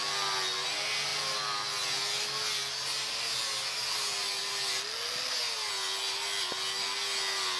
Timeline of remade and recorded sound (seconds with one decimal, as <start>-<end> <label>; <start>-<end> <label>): 0.0-7.6 recorded